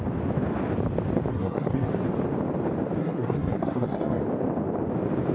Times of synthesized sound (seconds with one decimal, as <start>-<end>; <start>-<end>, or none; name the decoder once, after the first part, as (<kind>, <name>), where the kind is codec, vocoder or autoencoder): 1.3-1.9 (codec, SNAC); 3.0-4.2